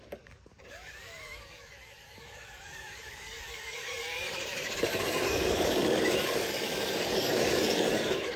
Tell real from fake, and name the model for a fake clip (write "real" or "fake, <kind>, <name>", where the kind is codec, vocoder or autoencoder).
fake, codec, DAC